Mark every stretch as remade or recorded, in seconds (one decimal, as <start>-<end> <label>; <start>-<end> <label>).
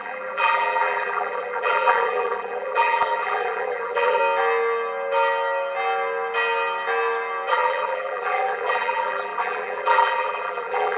0.0-4.2 remade; 4.2-7.5 recorded; 7.5-11.0 remade